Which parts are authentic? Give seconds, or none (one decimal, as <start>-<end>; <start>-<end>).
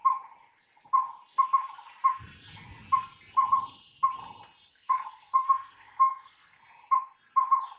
0.0-4.7; 6.6-7.8